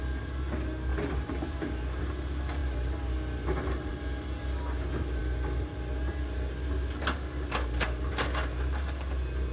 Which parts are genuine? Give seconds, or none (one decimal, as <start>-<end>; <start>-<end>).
0.0-0.9; 2.0-9.5